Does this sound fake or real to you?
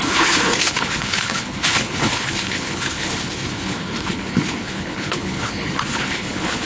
fake